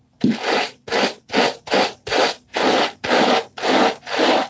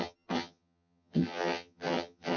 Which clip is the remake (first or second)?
second